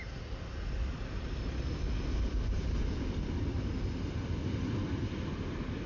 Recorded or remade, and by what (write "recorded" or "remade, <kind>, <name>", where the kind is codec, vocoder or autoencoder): recorded